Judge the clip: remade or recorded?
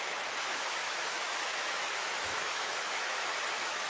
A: remade